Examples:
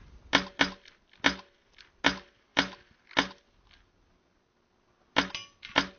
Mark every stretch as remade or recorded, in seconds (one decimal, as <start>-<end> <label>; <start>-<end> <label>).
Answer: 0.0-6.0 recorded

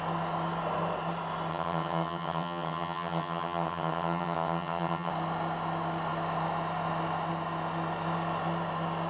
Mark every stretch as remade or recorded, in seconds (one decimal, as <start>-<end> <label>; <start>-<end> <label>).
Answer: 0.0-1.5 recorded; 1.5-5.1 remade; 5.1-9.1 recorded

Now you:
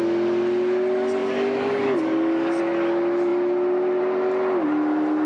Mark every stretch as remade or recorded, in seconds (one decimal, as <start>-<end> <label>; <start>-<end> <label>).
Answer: 0.0-1.2 recorded; 1.2-2.6 remade; 2.6-5.3 recorded